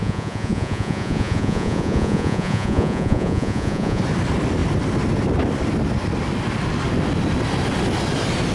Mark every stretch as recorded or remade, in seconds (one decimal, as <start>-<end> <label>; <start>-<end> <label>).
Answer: 0.0-4.0 remade; 4.0-8.5 recorded